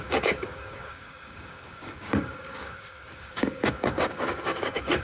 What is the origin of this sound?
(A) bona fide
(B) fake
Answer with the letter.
B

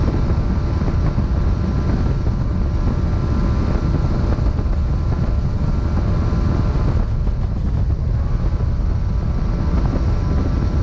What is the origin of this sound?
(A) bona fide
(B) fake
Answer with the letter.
A